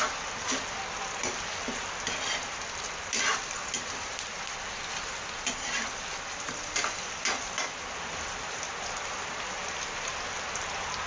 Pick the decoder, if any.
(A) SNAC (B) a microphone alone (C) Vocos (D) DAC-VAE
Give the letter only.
B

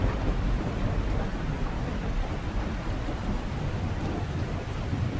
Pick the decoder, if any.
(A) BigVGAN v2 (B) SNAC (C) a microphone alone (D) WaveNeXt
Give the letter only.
A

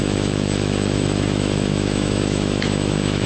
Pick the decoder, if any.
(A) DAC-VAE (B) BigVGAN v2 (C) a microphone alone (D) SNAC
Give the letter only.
A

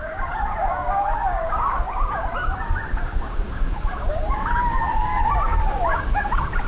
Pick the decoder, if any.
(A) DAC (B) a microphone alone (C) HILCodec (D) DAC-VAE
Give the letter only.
A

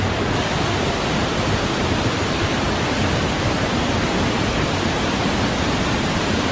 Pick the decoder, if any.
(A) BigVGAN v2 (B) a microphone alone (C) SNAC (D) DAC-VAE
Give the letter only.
A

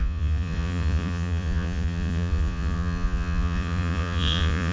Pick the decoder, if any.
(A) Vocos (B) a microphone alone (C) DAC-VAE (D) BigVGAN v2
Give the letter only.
A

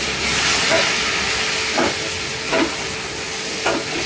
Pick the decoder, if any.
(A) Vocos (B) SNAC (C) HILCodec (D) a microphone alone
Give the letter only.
D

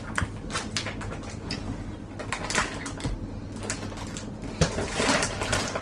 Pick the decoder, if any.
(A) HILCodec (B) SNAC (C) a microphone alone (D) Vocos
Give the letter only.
C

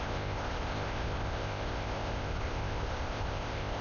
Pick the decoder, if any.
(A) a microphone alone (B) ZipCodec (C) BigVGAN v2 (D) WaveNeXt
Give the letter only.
B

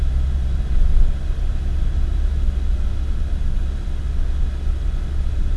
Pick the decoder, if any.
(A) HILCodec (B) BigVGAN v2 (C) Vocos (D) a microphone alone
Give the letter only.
D